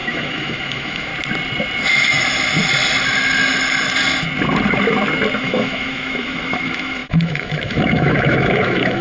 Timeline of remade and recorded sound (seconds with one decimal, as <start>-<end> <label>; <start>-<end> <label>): 0.0-1.1 remade; 1.1-5.4 recorded; 5.4-9.0 remade